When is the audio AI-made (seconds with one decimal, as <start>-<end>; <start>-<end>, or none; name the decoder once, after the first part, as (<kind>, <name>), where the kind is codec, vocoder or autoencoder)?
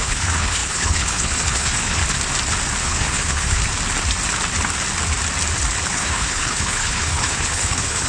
0.0-2.0 (codec, HILCodec); 2.8-3.6; 5.9-8.1